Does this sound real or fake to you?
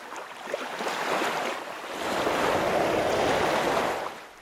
real